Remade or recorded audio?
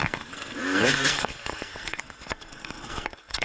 remade